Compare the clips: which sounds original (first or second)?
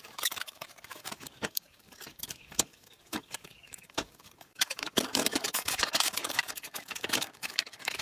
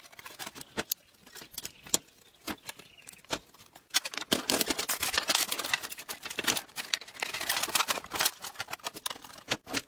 second